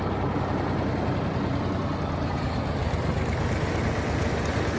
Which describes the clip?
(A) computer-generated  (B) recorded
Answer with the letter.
B